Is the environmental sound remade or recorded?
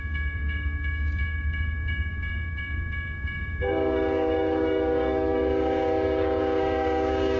remade